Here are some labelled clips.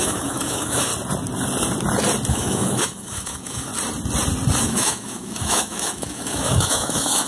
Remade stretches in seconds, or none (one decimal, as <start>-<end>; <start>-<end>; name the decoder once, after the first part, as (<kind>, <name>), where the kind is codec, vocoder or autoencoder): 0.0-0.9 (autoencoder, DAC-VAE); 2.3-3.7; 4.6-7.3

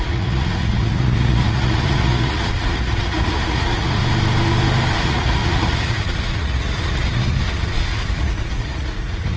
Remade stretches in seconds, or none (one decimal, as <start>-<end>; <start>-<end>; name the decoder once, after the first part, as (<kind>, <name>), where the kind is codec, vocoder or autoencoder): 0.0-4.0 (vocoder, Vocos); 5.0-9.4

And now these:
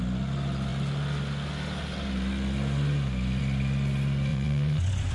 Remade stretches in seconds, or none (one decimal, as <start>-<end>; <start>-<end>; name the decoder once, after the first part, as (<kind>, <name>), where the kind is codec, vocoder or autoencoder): 4.3-5.1 (vocoder, Vocos)